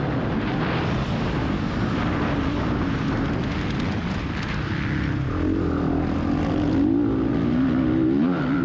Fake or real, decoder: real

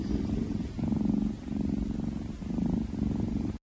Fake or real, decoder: real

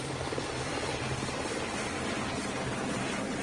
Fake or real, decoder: fake, vocoder, BigVGAN v2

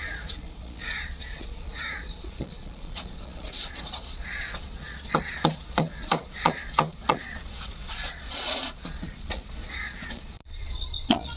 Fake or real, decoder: fake, vocoder, Vocos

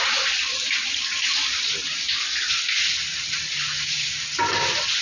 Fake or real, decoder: real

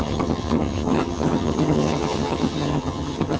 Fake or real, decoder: fake, vocoder, HiFi-GAN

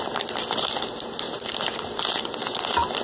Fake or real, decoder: real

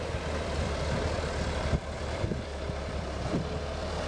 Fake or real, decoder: fake, vocoder, BigVGAN v2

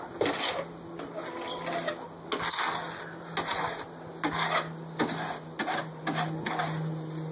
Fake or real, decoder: real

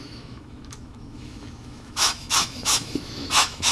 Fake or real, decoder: fake, autoencoder, DAC-VAE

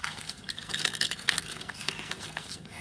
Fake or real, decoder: fake, codec, SNAC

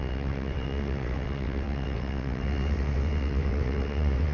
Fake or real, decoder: fake, vocoder, WaveNeXt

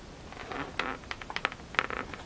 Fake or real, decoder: real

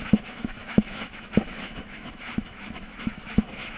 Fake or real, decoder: fake, autoencoder, DAC-VAE